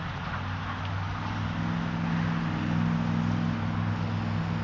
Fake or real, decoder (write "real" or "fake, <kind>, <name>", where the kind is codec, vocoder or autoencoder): real